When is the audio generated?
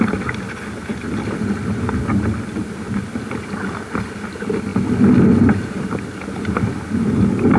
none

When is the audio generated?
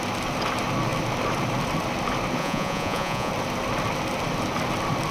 2.4-3.3 (vocoder, Vocos)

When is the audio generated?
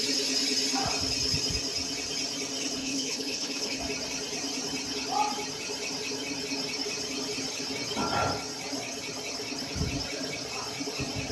2.8-3.8 (codec, HILCodec)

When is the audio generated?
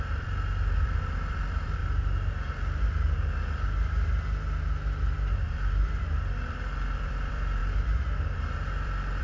0.0-1.8 (vocoder, BigVGAN v2); 5.3-9.2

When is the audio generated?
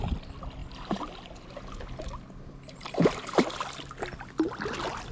none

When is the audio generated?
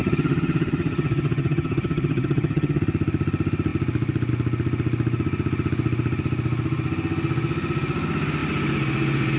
0.0-2.8 (vocoder, HiFi-GAN)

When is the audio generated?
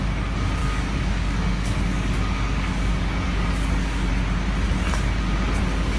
0.6-4.1 (codec, DAC)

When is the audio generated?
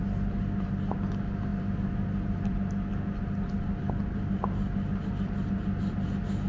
none